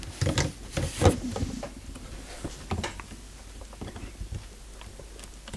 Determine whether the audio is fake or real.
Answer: real